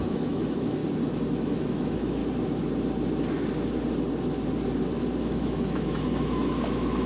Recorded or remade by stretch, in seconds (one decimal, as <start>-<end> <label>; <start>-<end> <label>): 0.0-0.8 remade; 0.8-1.3 recorded; 1.3-2.2 remade; 2.2-5.2 recorded; 5.2-7.1 remade